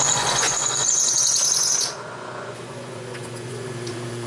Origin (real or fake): fake